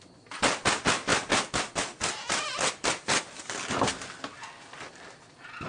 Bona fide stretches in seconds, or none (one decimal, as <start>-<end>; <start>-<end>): 0.0-5.7